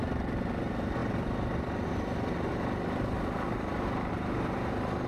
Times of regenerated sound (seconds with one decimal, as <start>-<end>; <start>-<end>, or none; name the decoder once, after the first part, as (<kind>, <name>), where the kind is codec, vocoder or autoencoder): none